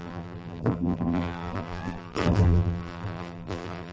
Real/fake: fake